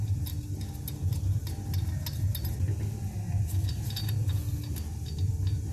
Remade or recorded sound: recorded